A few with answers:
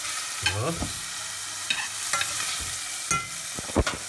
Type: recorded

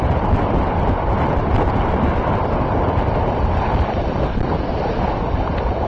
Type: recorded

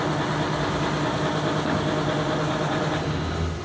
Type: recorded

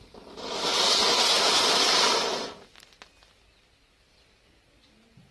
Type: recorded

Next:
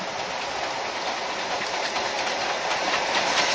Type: recorded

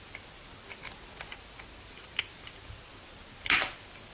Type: recorded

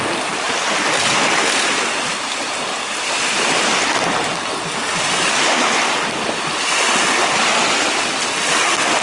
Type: recorded